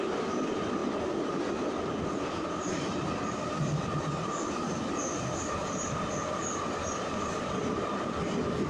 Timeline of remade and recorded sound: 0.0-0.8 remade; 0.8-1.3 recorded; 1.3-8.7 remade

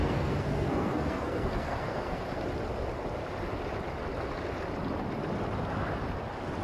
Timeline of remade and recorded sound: 0.0-2.4 remade; 2.4-6.6 recorded

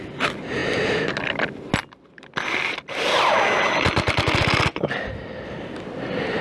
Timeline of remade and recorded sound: 0.0-6.4 recorded

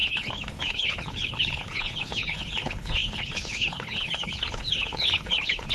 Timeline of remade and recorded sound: 0.0-5.7 remade